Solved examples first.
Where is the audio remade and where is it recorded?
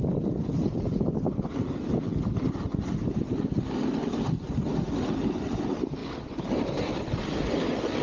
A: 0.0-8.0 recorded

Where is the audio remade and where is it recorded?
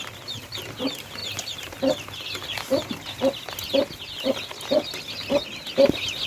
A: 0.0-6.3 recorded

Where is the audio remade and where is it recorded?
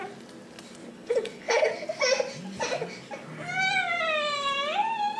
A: 0.0-0.9 recorded; 0.9-1.7 remade; 1.7-5.2 recorded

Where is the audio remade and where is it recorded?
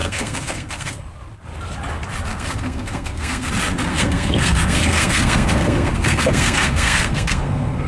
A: 0.0-1.0 remade; 1.0-2.3 recorded; 2.3-3.5 remade; 3.5-3.9 recorded; 3.9-7.9 remade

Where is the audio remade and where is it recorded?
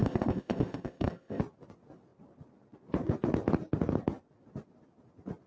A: 0.0-1.4 remade; 1.4-5.5 recorded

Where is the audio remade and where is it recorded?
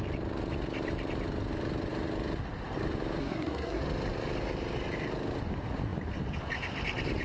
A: 0.0-3.2 recorded; 3.2-3.8 remade; 3.8-7.2 recorded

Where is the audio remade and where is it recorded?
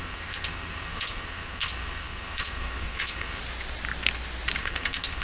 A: 0.0-3.4 remade; 3.4-4.6 recorded; 4.6-5.2 remade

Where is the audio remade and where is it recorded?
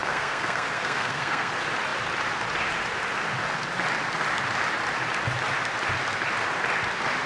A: 0.0-1.5 remade; 1.5-7.3 recorded